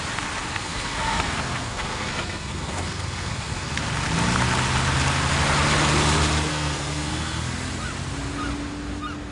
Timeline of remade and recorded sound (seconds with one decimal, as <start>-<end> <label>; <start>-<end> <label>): 0.0-0.5 recorded; 0.5-3.8 remade; 3.8-6.5 recorded; 6.5-7.4 remade; 7.4-9.3 recorded